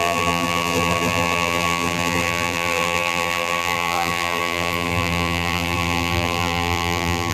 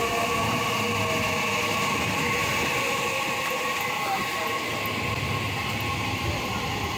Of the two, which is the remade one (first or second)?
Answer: first